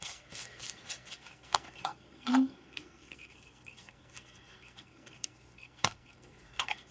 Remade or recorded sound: remade